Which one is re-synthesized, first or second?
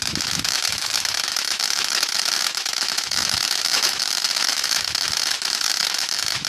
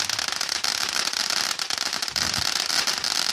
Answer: first